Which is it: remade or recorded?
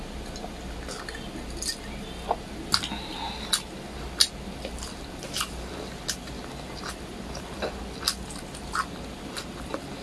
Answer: recorded